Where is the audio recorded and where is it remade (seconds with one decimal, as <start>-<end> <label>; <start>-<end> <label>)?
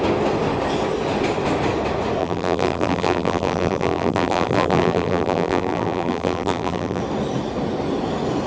0.0-2.2 recorded; 2.2-7.0 remade; 7.0-8.5 recorded